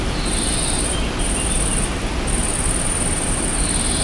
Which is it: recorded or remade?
recorded